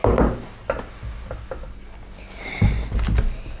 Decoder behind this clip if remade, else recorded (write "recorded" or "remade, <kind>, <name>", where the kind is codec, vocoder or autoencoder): recorded